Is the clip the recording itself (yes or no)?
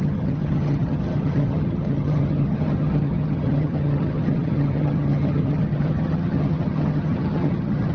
no